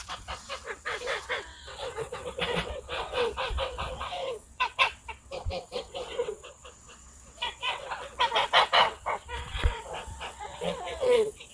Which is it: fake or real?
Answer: fake